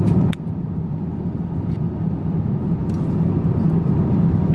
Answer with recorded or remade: recorded